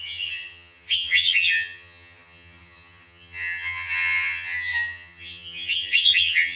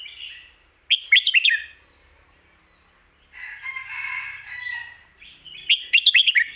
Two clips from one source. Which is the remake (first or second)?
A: first